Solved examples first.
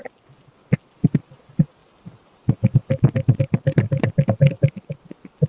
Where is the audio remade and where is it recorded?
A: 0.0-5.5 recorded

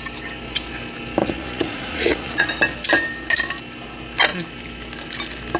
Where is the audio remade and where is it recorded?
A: 0.0-1.2 recorded; 1.2-2.5 remade; 2.5-5.6 recorded